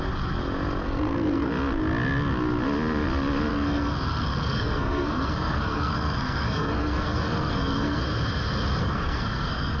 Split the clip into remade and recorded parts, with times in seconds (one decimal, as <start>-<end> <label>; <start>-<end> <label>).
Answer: 0.0-0.8 recorded; 0.8-1.5 remade; 1.5-3.5 recorded; 3.5-8.0 remade; 8.0-8.8 recorded; 8.8-9.8 remade